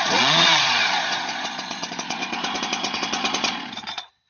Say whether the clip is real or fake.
fake